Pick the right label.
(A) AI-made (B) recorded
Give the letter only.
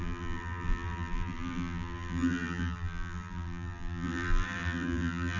A